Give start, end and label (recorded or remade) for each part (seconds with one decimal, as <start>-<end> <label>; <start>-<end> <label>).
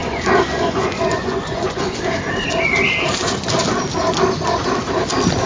0.0-2.0 remade; 2.0-5.5 recorded